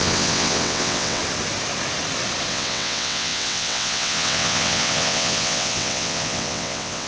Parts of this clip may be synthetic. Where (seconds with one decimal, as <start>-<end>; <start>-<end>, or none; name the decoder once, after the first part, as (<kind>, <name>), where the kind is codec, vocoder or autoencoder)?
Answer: 0.0-1.2 (vocoder, WaveNeXt); 2.5-7.1